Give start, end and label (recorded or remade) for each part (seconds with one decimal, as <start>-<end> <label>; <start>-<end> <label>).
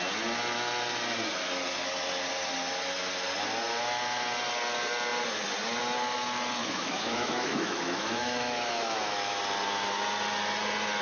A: 0.0-6.6 recorded; 6.6-9.4 remade; 9.4-11.0 recorded